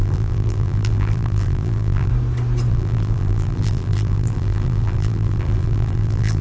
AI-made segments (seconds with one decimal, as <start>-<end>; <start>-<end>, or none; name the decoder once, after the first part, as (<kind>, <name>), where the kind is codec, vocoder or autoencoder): 0.0-2.1 (vocoder, BigVGAN v2); 2.7-6.4